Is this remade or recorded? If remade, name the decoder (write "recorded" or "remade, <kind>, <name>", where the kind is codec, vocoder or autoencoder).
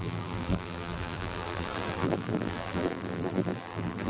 remade, vocoder, BigVGAN v2